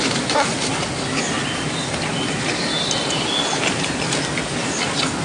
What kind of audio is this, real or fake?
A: real